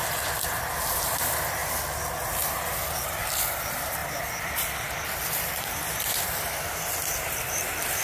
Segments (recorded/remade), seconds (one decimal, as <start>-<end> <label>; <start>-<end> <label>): 0.0-4.0 recorded; 4.0-8.0 remade

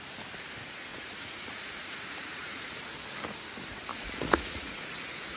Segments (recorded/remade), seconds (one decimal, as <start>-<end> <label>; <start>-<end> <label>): 0.0-0.9 recorded; 0.9-2.7 remade; 2.7-3.9 recorded; 3.9-5.0 remade; 5.0-5.4 recorded

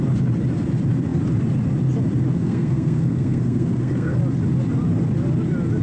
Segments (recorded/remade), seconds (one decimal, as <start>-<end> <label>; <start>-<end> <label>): 0.0-2.3 recorded; 2.3-4.2 remade; 4.2-5.8 recorded

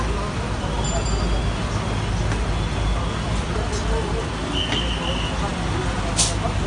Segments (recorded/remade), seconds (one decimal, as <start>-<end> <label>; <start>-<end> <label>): 0.0-6.7 recorded

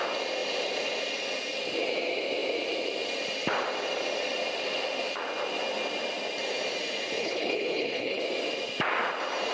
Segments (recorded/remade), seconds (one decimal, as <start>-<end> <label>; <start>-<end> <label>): 0.0-7.2 recorded; 7.2-8.2 remade; 8.2-9.5 recorded

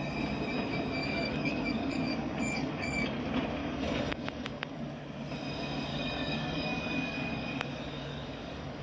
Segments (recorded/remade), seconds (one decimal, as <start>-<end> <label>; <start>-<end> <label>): 0.0-1.0 recorded; 1.0-3.2 remade; 3.2-3.6 recorded; 3.6-4.9 remade; 4.9-5.9 recorded; 5.9-8.8 remade